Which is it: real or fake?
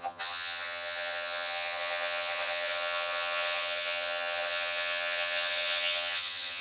fake